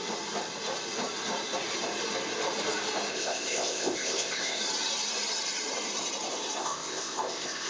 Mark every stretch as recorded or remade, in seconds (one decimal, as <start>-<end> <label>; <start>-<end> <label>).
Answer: 0.0-3.1 recorded; 3.1-4.6 remade; 4.6-6.6 recorded; 6.6-7.7 remade